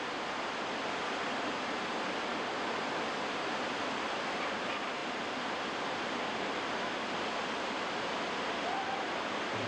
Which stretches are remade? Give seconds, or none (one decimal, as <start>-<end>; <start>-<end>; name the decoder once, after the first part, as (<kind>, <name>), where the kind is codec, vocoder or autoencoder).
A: 0.0-5.0 (vocoder, BigVGAN v2); 6.3-9.7